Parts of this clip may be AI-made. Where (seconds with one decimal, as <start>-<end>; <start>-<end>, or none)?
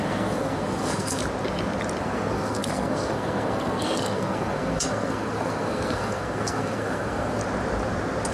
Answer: 0.0-1.2; 2.0-7.4